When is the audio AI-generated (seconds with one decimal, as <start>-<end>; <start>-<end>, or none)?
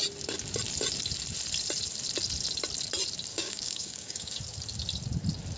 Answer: 3.3-4.4